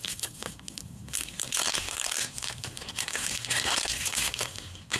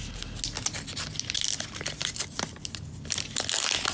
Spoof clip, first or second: first